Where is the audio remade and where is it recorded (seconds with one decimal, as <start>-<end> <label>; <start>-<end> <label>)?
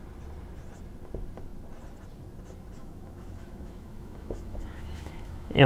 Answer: 0.0-2.8 recorded; 2.8-5.7 remade